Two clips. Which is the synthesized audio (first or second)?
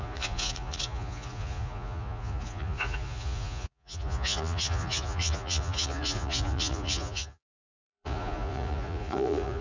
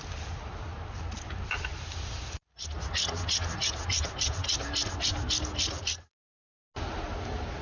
first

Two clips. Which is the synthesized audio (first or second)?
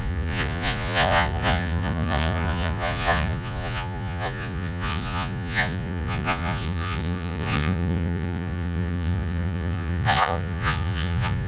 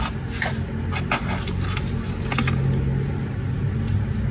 first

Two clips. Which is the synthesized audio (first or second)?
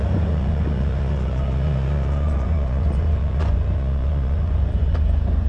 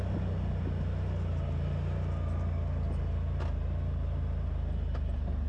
first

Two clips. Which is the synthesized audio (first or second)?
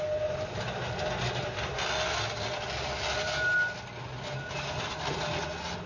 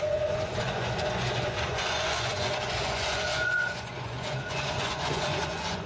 second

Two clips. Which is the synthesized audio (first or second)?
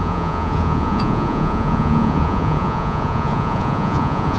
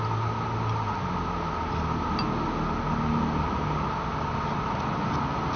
first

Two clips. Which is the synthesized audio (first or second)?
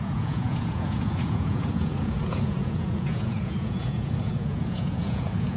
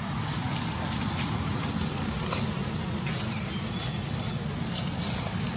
first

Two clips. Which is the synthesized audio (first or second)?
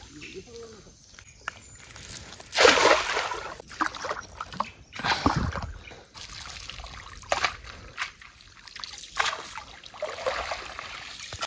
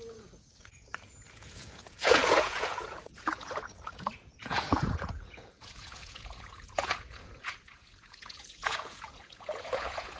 second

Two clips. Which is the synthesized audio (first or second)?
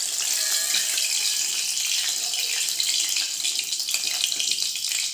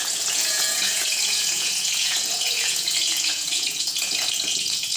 second